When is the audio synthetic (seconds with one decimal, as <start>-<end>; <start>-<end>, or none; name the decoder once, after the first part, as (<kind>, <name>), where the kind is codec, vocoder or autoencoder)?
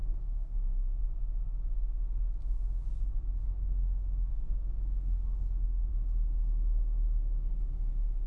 0.0-1.0 (codec, SNAC); 3.4-5.9